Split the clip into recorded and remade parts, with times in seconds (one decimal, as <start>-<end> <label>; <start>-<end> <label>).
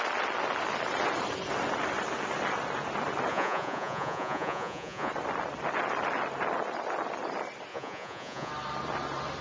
0.0-3.3 recorded; 3.3-5.1 remade; 5.1-7.7 recorded; 7.7-8.5 remade; 8.5-9.4 recorded